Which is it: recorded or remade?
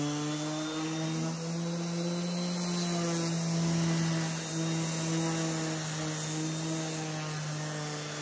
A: recorded